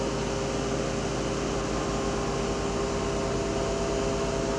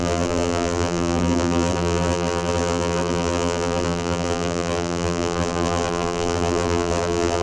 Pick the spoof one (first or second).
second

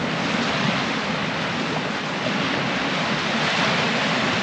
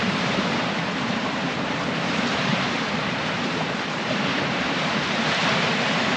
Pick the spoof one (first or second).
second